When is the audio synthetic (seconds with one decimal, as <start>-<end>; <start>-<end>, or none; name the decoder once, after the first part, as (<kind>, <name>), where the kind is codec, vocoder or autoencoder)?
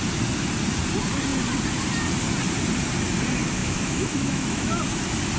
3.6-4.8 (autoencoder, DAC-VAE)